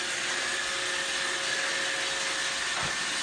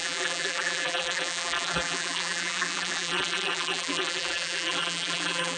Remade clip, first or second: second